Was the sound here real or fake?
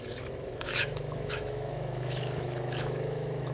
fake